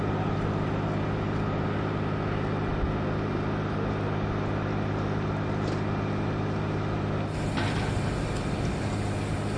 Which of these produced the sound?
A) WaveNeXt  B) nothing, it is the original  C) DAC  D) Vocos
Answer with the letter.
B